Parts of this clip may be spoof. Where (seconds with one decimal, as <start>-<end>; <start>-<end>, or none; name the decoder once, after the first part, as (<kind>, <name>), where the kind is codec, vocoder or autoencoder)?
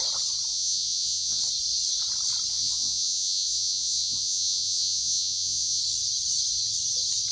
0.5-1.4 (vocoder, Vocos); 2.5-5.8